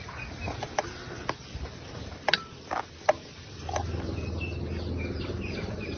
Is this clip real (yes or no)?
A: yes